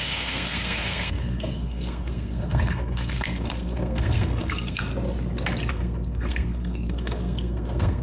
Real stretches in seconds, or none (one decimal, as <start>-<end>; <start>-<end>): 4.9-5.7